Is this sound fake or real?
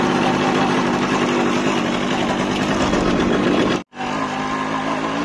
real